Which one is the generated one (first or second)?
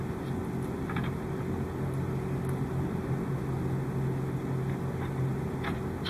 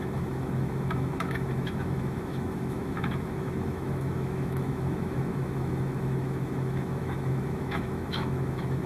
second